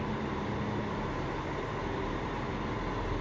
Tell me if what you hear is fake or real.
real